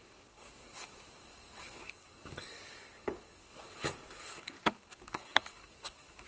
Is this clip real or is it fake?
fake